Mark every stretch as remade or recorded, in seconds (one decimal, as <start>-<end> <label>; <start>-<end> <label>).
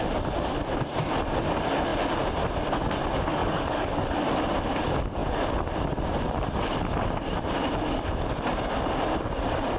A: 0.0-3.4 recorded; 3.4-4.2 remade; 4.2-9.8 recorded